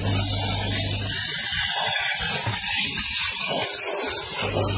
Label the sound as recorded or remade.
recorded